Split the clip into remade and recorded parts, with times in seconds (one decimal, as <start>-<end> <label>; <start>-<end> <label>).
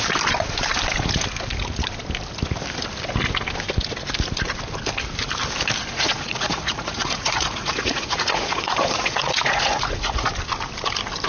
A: 0.0-5.9 recorded; 5.9-10.3 remade; 10.3-11.3 recorded